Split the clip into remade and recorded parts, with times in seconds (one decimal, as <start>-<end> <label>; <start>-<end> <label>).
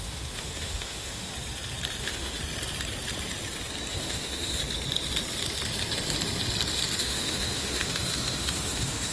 0.0-1.3 remade; 1.3-2.0 recorded; 2.0-2.4 remade; 2.4-3.9 recorded; 3.9-4.6 remade; 4.6-7.0 recorded; 7.0-9.1 remade